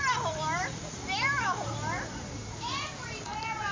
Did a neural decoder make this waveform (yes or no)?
no